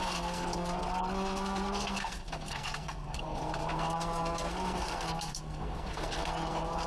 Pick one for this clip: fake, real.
fake